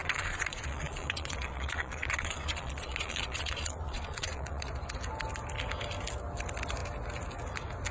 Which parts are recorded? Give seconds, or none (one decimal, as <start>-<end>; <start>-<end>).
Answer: 4.7-7.9